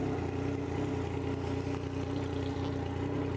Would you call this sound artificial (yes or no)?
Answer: no